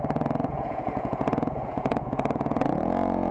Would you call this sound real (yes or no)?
no